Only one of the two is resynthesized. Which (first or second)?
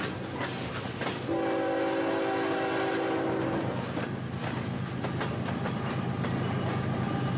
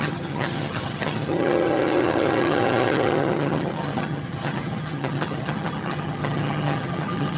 second